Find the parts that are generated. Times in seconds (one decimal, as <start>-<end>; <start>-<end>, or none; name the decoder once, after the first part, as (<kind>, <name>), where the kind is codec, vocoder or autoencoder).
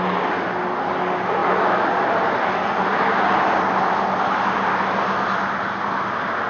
none